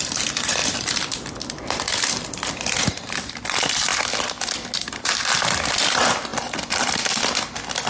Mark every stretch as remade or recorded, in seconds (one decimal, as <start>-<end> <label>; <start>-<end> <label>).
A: 0.0-3.9 remade; 3.9-4.8 recorded; 4.8-6.3 remade; 6.3-7.9 recorded